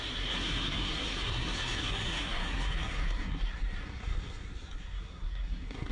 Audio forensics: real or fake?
fake